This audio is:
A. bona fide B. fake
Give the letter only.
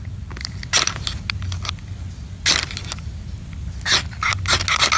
A